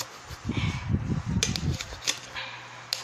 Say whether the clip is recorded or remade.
recorded